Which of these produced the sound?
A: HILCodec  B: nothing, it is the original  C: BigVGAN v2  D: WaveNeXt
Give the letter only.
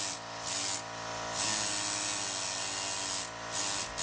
B